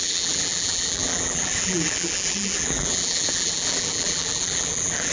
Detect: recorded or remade remade